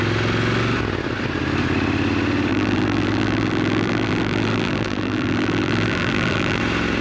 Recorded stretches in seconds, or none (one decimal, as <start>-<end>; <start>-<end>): 0.0-2.5; 6.6-7.0